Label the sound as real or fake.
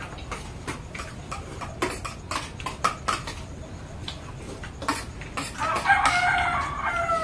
real